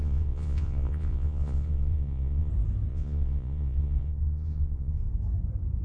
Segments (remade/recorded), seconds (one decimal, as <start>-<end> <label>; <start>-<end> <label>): 0.0-2.5 remade; 2.5-2.9 recorded; 2.9-5.1 remade; 5.1-5.8 recorded